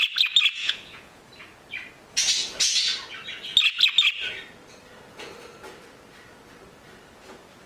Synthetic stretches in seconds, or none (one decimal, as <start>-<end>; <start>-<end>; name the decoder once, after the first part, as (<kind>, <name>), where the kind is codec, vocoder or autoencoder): 0.6-1.2 (vocoder, Vocos)